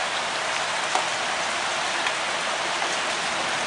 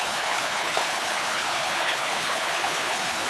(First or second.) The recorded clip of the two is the first